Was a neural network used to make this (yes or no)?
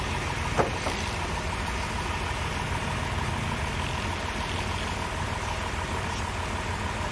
no